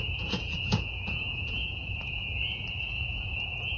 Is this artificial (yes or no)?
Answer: yes